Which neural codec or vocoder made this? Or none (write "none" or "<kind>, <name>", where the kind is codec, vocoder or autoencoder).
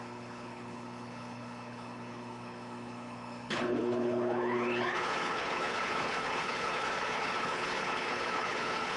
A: codec, HILCodec